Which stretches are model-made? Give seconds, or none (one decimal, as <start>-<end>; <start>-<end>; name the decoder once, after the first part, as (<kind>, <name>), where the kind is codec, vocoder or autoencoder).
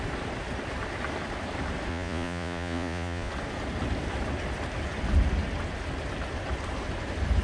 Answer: 1.9-3.3 (vocoder, Vocos)